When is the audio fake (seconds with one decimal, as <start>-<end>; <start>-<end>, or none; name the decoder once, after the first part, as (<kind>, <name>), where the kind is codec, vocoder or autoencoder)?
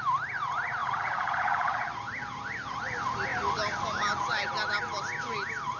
0.8-1.9 (vocoder, Vocos)